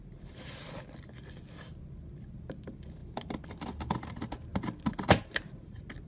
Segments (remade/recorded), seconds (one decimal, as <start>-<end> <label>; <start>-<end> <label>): 0.0-6.1 recorded